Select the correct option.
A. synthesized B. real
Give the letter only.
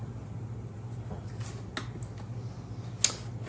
B